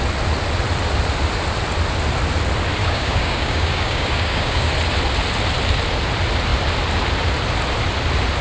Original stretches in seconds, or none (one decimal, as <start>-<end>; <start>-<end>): 0.0-2.8; 4.7-8.4

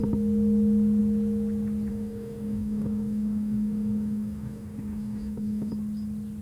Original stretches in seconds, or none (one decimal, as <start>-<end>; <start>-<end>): 0.0-1.9; 5.7-6.4

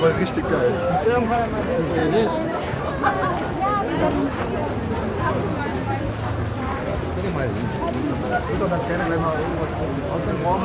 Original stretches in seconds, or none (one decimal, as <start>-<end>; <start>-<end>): 0.0-0.4; 1.6-2.0; 2.8-10.6

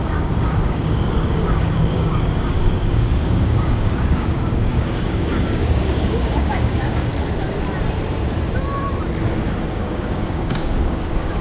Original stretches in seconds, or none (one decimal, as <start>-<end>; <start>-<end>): 7.1-9.7

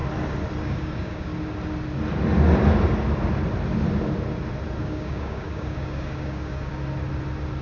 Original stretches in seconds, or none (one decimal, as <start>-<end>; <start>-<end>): 0.0-0.6; 1.3-4.8; 6.7-7.6